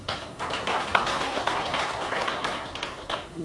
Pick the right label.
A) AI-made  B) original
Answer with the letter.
A